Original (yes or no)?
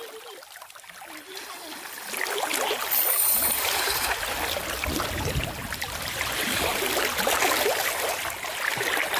no